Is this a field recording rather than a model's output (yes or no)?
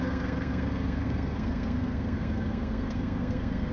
no